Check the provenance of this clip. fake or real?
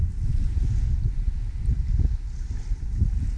real